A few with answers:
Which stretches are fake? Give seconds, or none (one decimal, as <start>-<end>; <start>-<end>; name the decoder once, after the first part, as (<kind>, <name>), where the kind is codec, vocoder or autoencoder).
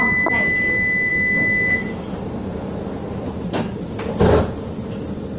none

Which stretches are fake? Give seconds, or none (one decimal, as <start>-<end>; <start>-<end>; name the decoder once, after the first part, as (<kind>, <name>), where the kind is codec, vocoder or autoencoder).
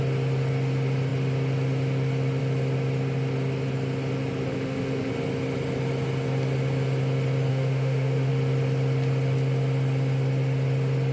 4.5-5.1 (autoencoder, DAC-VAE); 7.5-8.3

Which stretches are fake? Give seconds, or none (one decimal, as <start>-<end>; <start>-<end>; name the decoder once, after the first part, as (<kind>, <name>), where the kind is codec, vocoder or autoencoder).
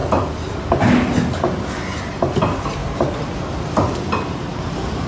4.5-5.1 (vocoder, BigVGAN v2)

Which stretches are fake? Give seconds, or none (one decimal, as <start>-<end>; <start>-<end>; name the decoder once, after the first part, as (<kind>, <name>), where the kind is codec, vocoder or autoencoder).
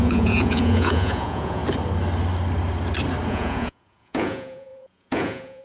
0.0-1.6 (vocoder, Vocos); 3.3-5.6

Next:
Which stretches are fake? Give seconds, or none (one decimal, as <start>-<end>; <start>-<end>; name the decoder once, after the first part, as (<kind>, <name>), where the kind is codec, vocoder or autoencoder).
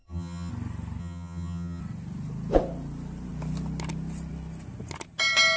0.0-0.5 (vocoder, HiFi-GAN); 1.0-1.8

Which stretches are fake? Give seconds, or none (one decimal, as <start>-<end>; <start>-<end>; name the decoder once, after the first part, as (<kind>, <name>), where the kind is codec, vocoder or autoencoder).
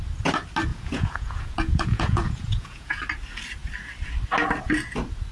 0.7-3.0 (vocoder, Vocos)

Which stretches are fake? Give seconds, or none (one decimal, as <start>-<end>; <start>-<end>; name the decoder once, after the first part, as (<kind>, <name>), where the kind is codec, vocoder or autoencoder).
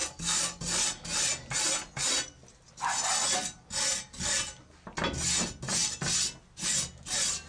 none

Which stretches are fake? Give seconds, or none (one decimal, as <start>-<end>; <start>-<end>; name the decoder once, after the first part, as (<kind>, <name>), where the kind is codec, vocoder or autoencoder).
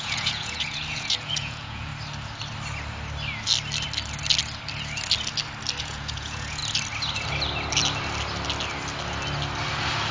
0.0-1.9 (vocoder, Vocos); 5.8-6.6